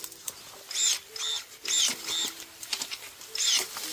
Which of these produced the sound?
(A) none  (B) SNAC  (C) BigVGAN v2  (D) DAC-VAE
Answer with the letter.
A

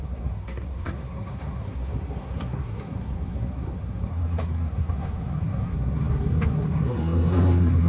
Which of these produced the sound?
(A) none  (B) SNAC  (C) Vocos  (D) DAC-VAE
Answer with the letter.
B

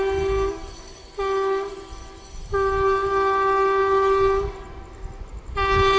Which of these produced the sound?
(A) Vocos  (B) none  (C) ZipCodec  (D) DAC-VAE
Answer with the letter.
B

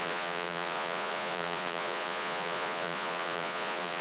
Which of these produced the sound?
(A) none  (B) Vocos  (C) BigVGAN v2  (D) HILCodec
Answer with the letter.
B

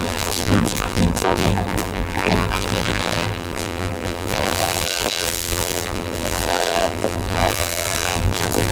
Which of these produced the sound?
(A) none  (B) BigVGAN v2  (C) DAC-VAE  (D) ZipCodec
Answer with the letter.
B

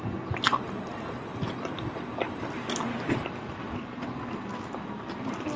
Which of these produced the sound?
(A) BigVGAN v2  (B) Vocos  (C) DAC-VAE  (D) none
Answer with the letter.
D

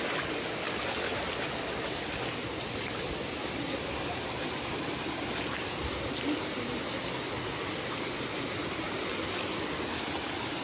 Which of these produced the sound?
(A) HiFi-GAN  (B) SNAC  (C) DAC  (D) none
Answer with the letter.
D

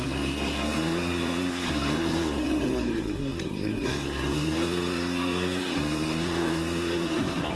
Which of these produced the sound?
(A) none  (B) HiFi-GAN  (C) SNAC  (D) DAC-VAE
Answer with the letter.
C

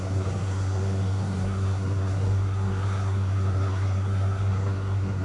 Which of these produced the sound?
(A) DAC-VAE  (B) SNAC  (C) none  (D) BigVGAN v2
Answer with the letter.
B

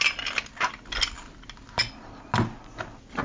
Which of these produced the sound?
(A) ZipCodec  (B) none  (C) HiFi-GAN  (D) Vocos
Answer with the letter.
B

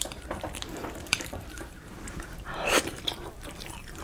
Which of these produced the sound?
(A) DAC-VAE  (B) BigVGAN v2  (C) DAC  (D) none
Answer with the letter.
B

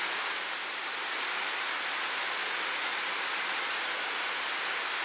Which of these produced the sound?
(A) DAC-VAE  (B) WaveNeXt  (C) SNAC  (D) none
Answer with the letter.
D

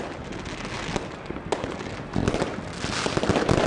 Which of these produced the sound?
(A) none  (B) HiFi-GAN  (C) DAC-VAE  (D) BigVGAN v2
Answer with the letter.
A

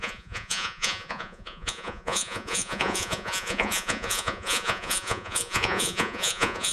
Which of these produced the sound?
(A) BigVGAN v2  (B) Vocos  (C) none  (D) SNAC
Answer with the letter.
B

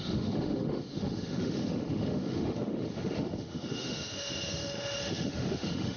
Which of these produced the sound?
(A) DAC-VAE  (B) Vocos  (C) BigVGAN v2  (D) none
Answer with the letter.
A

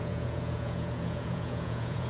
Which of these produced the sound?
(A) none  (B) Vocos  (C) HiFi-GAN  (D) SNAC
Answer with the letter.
B